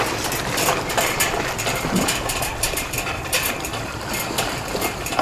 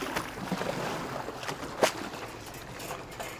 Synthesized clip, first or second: first